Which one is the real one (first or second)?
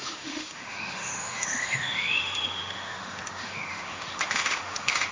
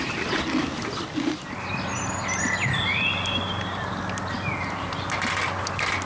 second